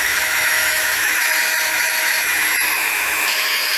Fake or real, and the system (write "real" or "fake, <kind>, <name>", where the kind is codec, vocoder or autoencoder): fake, autoencoder, DAC-VAE